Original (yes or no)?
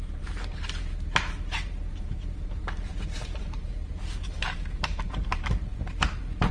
no